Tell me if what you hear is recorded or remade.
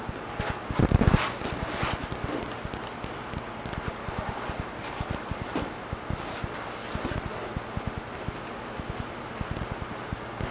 recorded